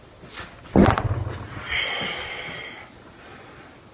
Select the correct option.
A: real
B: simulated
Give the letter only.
B